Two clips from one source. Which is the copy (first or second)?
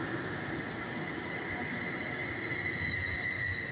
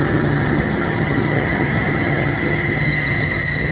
second